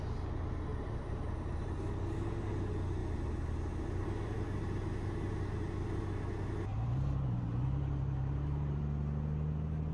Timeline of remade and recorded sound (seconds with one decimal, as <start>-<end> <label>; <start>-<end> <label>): 0.0-0.7 recorded; 0.7-1.8 remade; 1.8-6.7 recorded; 6.7-8.8 remade; 8.8-9.9 recorded